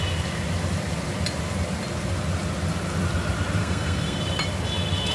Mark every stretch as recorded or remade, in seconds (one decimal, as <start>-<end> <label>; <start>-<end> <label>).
0.0-3.6 recorded; 3.6-4.2 remade; 4.2-5.1 recorded

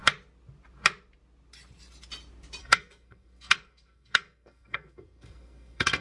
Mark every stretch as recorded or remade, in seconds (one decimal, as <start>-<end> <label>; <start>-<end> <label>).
0.0-2.6 recorded; 2.6-6.0 remade

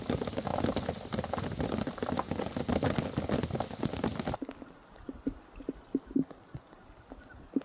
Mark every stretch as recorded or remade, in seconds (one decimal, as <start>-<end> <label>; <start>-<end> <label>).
0.0-7.6 recorded

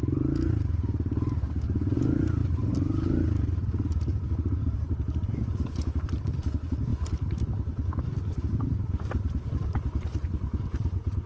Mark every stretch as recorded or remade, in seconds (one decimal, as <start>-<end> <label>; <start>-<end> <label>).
0.0-11.3 recorded

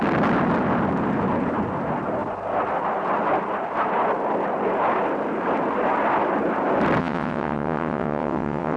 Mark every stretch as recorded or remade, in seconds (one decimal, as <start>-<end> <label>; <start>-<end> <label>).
0.0-7.0 recorded; 7.0-8.8 remade

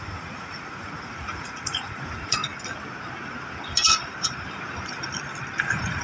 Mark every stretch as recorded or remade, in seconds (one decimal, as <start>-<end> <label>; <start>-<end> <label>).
0.0-2.4 remade; 2.4-5.6 recorded; 5.6-6.0 remade